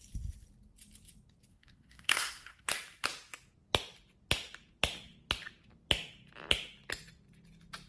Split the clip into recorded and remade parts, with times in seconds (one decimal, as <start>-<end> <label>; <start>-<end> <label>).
0.0-1.5 recorded; 1.5-2.7 remade; 2.7-7.9 recorded